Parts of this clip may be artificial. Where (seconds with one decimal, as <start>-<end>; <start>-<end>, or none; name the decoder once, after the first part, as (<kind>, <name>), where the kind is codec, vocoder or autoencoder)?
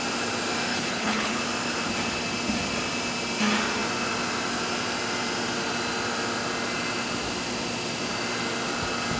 0.7-1.4 (codec, HILCodec)